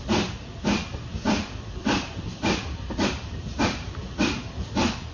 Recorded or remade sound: remade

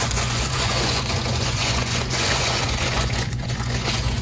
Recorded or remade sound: remade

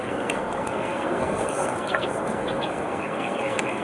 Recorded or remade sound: remade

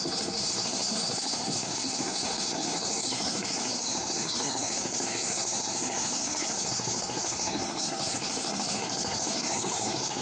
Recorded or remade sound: remade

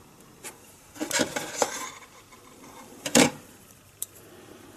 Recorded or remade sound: remade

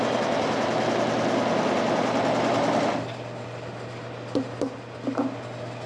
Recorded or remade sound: recorded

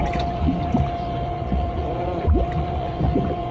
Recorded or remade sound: remade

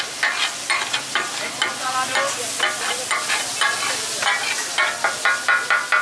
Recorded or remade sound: recorded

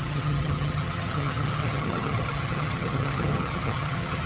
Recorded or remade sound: remade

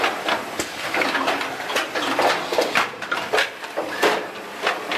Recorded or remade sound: remade